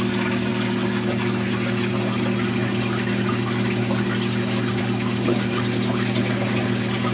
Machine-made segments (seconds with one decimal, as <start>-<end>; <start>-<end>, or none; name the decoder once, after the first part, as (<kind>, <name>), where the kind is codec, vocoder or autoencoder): none

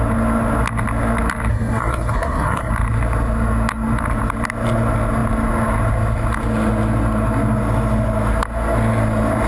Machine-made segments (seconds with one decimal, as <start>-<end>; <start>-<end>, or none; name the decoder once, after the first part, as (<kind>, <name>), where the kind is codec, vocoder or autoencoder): 1.5-2.7 (codec, SNAC)

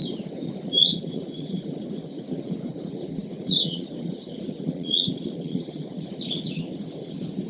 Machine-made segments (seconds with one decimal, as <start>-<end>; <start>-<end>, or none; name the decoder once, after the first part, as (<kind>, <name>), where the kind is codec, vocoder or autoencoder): 0.8-7.5 (vocoder, Vocos)

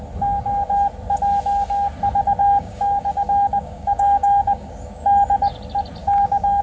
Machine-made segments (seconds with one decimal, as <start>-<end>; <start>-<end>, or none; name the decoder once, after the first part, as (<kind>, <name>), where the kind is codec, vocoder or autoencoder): 2.4-5.0 (codec, DAC); 6.0-6.6